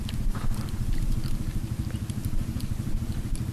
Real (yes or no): no